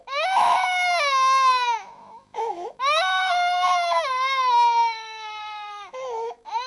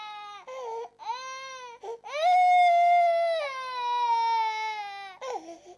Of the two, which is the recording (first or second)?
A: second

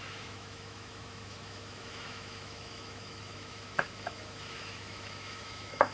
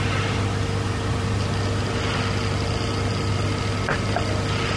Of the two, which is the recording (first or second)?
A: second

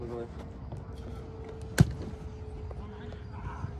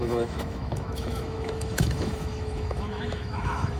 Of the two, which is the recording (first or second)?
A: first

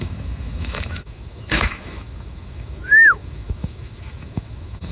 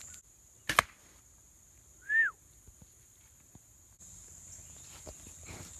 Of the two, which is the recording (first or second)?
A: second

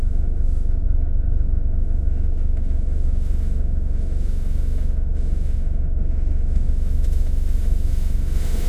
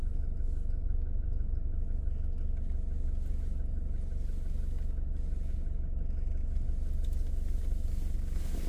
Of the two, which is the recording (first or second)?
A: second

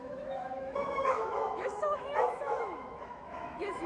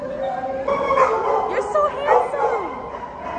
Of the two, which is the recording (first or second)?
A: second